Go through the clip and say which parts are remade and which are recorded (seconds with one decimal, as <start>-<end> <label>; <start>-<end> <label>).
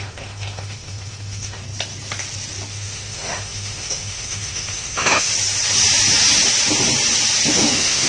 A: 0.0-1.6 remade; 1.6-2.7 recorded; 2.7-5.3 remade; 5.3-7.5 recorded; 7.5-8.1 remade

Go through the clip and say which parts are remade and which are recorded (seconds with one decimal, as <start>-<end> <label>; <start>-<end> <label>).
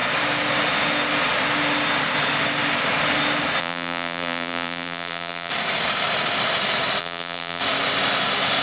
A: 0.0-3.6 recorded; 3.6-5.5 remade; 5.5-7.0 recorded; 7.0-7.6 remade; 7.6-8.6 recorded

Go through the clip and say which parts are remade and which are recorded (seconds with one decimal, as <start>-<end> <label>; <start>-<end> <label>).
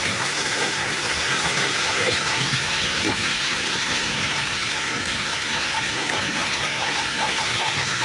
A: 0.0-8.0 remade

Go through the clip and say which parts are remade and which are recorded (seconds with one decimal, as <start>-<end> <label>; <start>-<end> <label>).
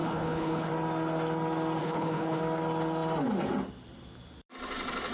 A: 0.0-0.7 remade; 0.7-1.8 recorded; 1.8-2.4 remade; 2.4-5.1 recorded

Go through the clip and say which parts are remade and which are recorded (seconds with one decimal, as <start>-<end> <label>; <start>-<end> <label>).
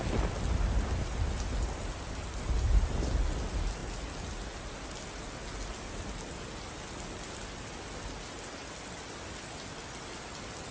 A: 0.0-10.7 recorded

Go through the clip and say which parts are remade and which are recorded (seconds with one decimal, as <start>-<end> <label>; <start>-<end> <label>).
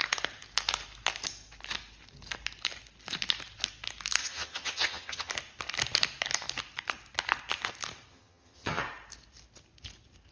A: 0.0-4.2 recorded; 4.2-5.3 remade; 5.3-8.1 recorded; 8.1-8.8 remade; 8.8-10.3 recorded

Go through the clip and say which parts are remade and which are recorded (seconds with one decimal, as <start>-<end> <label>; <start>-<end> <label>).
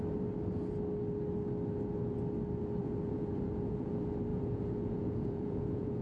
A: 0.0-2.8 recorded; 2.8-3.9 remade; 3.9-4.3 recorded; 4.3-6.0 remade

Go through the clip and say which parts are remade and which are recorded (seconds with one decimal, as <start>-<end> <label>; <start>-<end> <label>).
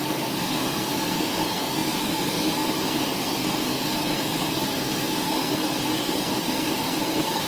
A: 0.0-7.5 remade